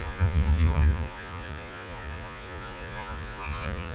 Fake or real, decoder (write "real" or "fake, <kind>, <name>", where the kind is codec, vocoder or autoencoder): fake, vocoder, Vocos